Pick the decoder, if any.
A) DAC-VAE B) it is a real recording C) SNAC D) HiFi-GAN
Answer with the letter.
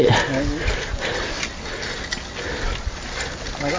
B